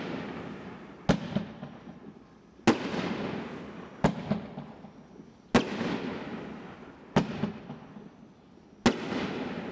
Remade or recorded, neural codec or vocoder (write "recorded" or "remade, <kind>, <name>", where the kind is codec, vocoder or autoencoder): recorded